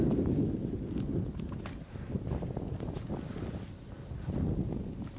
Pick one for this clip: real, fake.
real